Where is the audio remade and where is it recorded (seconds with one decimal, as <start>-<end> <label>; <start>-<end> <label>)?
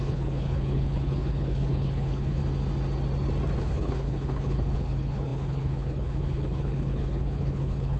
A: 0.0-2.4 remade; 2.4-3.6 recorded; 3.6-8.0 remade